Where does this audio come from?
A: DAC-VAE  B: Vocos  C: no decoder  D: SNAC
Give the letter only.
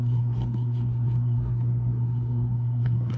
D